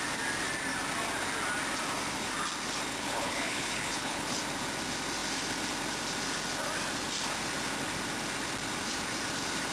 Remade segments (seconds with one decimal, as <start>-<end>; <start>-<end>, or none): 2.9-4.4